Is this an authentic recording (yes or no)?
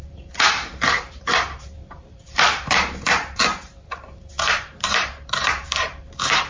no